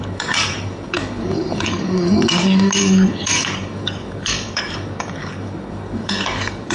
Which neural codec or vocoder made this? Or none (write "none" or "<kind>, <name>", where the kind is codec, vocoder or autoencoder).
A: codec, DAC